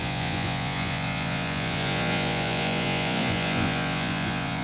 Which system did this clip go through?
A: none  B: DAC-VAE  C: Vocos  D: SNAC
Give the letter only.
C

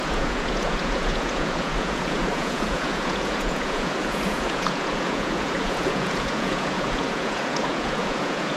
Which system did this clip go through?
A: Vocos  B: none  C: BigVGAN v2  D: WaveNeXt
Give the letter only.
A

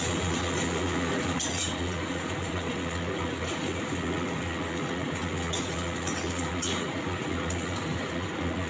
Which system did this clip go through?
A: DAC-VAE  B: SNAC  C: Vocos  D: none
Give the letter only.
C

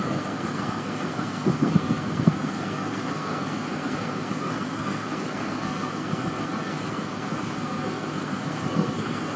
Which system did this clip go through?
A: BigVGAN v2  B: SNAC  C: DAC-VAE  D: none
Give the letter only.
B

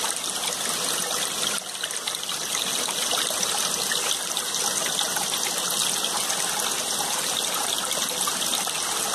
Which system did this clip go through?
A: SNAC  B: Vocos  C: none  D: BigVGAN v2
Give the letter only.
C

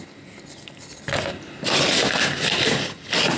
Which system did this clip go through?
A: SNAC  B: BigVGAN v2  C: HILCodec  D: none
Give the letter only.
D